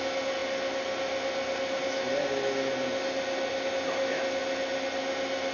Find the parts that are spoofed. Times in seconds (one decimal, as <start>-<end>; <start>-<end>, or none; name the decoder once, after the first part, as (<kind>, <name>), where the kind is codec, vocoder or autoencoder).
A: none